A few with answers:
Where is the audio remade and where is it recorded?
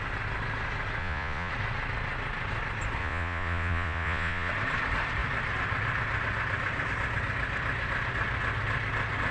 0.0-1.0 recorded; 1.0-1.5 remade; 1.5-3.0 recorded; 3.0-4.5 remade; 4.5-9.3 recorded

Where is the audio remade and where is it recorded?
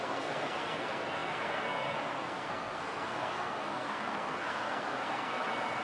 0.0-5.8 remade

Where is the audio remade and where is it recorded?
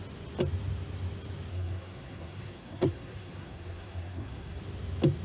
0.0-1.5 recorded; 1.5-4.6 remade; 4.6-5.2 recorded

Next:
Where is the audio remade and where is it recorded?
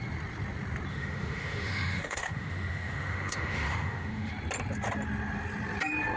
0.0-0.9 recorded; 0.9-4.3 remade; 4.3-6.2 recorded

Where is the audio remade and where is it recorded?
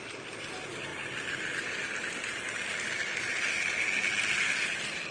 0.0-5.1 recorded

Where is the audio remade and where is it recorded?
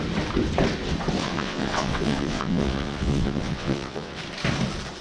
0.0-1.2 recorded; 1.2-4.2 remade; 4.2-5.0 recorded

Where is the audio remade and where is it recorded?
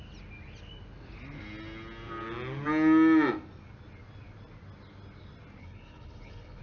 0.0-5.6 recorded; 5.6-6.6 remade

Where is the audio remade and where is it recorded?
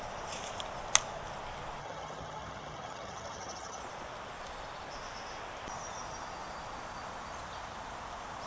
0.0-1.8 recorded; 1.8-3.8 remade; 3.8-8.5 recorded